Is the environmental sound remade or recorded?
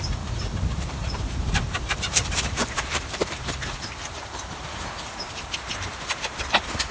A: remade